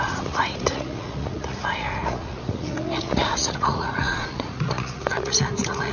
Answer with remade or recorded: remade